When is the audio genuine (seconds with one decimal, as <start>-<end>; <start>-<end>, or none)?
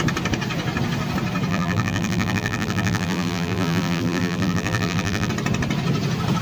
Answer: 0.0-1.5; 5.3-6.4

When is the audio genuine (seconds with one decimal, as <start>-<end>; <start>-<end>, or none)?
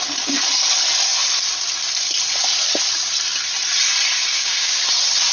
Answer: 0.0-4.3; 4.8-5.3